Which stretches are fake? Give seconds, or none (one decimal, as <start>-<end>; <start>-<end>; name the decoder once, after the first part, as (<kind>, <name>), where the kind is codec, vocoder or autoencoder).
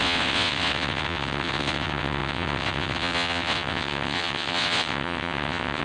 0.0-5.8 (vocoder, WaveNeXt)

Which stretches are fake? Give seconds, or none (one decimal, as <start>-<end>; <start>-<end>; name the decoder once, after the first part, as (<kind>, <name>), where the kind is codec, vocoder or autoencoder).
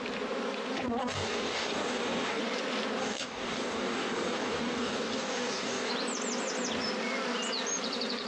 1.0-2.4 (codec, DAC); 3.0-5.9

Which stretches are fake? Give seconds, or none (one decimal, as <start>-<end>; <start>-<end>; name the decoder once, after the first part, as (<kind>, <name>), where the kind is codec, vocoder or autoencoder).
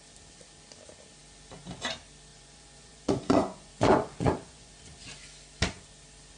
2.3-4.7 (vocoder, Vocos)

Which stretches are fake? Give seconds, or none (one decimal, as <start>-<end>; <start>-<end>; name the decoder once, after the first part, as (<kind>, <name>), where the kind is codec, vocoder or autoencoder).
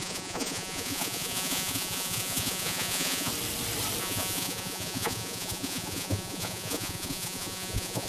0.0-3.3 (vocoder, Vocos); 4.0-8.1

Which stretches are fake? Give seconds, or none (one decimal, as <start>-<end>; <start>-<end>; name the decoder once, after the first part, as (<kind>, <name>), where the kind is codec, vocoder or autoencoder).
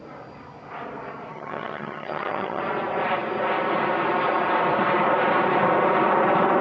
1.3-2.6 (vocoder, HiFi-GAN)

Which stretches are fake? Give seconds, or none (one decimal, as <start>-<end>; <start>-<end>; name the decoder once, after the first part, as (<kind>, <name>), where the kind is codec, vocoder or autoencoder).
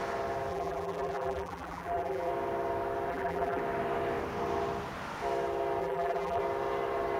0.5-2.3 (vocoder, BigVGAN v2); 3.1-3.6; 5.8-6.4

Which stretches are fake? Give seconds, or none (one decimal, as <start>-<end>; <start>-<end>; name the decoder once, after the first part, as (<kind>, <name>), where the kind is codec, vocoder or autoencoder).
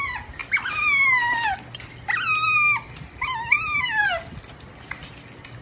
none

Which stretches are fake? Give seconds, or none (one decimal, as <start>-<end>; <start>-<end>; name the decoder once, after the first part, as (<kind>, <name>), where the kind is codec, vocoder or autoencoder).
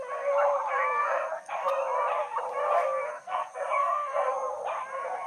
1.0-1.7 (codec, SNAC); 3.1-4.6